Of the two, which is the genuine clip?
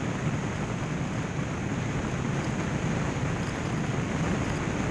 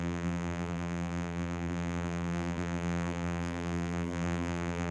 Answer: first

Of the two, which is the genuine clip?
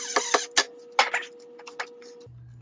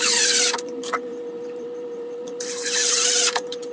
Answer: first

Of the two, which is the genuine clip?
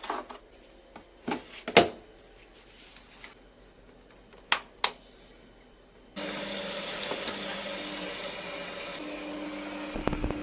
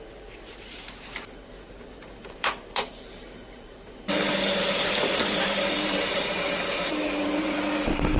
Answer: first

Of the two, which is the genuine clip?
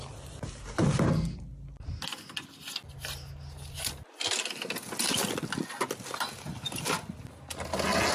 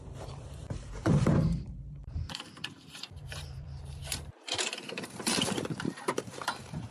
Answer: first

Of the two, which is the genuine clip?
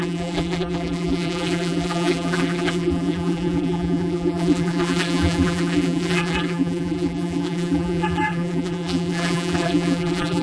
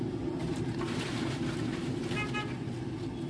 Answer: second